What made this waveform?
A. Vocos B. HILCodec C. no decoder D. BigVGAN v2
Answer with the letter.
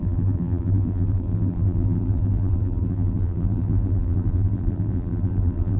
D